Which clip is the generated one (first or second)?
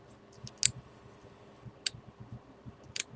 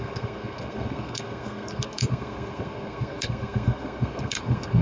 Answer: second